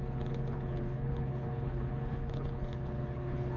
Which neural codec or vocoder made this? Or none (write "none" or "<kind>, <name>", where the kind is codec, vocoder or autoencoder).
codec, HILCodec